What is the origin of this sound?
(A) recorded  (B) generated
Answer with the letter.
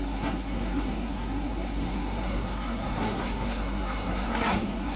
B